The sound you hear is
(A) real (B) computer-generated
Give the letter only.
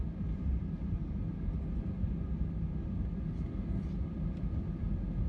A